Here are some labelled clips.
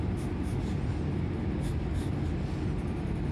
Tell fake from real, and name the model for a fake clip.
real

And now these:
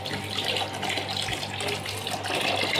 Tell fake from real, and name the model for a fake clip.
real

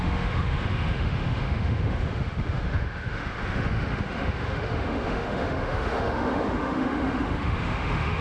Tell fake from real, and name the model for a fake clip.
fake, autoencoder, DAC-VAE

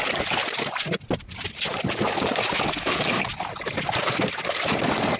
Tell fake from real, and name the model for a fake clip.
real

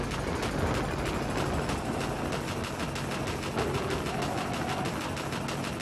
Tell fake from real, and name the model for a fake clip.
real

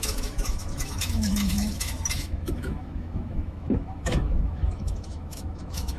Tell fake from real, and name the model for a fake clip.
fake, autoencoder, DAC-VAE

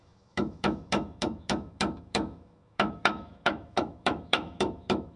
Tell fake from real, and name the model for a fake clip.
fake, autoencoder, DAC-VAE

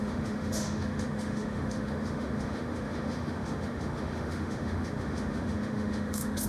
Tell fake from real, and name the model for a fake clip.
fake, autoencoder, DAC-VAE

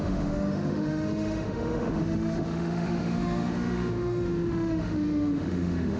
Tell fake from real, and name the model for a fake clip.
fake, autoencoder, DAC-VAE